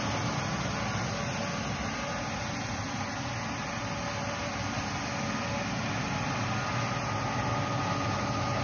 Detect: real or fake real